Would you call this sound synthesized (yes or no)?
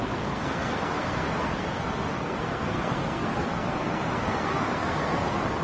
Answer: yes